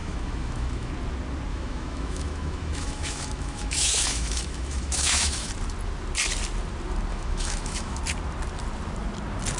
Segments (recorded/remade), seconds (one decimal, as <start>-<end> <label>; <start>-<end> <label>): 0.0-0.9 remade; 0.9-1.5 recorded; 1.5-5.5 remade; 5.5-7.1 recorded; 7.1-8.0 remade; 8.0-9.6 recorded